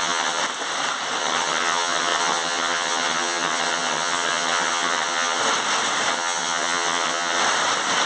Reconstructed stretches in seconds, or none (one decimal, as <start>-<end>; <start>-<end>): 0.0-0.4; 1.2-5.4; 6.1-7.4